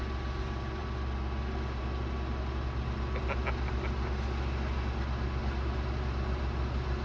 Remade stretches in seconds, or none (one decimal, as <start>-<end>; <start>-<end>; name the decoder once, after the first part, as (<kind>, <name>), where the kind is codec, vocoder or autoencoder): none